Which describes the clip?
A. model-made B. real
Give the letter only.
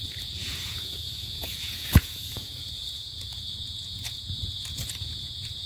A